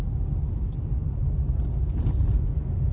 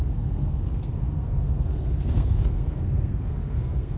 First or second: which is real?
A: first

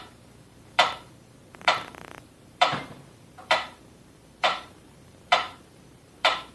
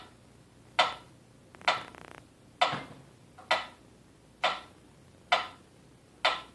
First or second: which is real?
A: second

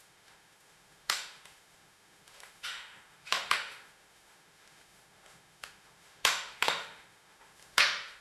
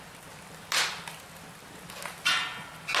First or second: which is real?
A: second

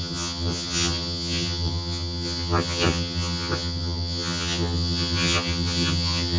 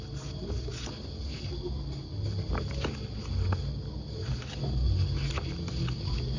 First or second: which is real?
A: second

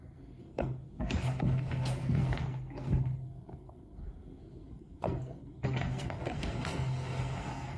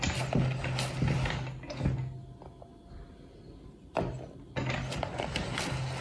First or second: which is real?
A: second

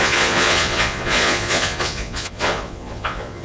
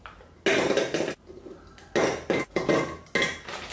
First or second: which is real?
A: second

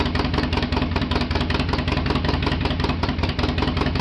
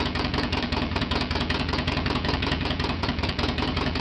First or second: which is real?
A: first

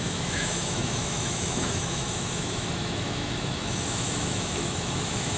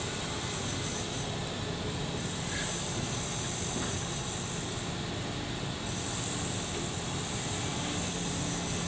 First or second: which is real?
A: second